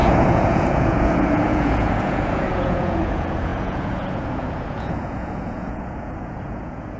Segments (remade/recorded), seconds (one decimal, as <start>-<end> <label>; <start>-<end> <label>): 0.0-7.0 remade

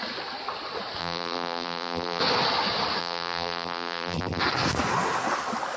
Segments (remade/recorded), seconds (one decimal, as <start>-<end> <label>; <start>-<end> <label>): 0.0-1.0 recorded; 1.0-2.2 remade; 2.2-3.0 recorded; 3.0-4.4 remade; 4.4-5.8 recorded

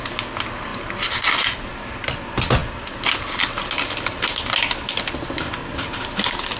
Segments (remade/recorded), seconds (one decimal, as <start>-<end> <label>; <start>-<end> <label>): 0.0-6.6 recorded

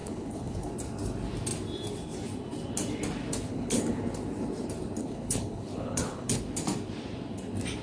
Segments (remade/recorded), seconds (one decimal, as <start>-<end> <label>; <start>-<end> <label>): 0.0-0.7 remade; 0.7-3.5 recorded; 3.5-4.0 remade; 4.0-5.0 recorded; 5.0-6.4 remade; 6.4-7.8 recorded

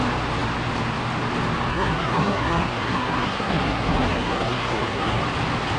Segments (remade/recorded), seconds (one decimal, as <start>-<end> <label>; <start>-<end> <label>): 0.0-1.7 recorded; 1.7-5.2 remade; 5.2-5.8 recorded

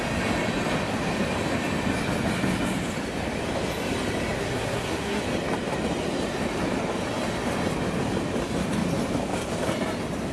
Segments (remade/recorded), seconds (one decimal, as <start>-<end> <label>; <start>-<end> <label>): 0.0-4.4 recorded; 4.4-5.2 remade; 5.2-10.3 recorded

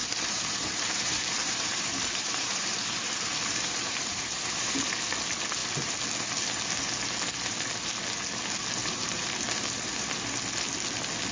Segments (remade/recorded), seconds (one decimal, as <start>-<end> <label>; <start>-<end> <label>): 0.0-4.9 remade; 4.9-8.8 recorded; 8.8-9.9 remade; 9.9-11.3 recorded